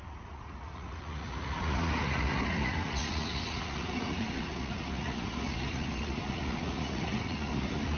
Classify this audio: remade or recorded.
remade